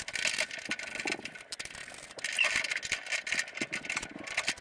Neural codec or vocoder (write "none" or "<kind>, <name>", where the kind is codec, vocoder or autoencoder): none